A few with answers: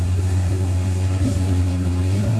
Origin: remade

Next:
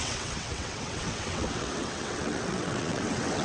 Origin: remade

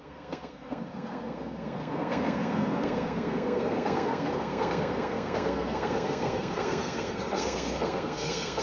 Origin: remade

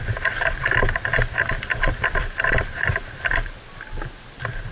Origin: recorded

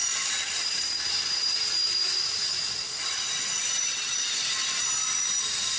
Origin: recorded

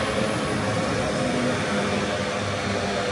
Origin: recorded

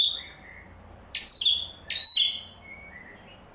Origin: recorded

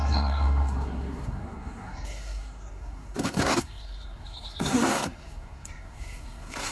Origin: remade